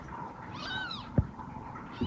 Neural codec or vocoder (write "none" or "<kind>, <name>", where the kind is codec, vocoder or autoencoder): vocoder, BigVGAN v2